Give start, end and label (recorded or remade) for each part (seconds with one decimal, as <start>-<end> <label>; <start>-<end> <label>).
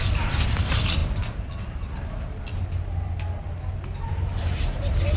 0.0-5.2 recorded